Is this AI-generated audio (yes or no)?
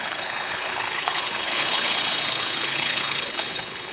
yes